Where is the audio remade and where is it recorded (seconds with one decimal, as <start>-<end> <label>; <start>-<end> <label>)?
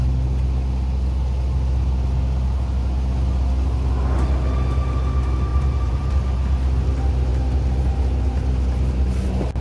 0.0-5.5 recorded; 5.5-6.1 remade; 6.1-9.6 recorded